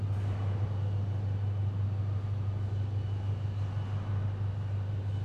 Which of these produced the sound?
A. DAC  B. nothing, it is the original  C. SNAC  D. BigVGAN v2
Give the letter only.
B